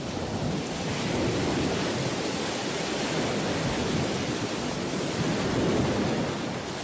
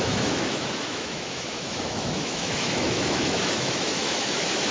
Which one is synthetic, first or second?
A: second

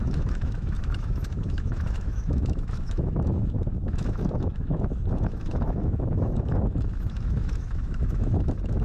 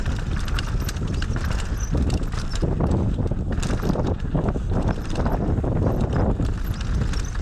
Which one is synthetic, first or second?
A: first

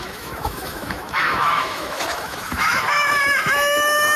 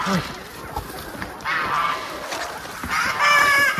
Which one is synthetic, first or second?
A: first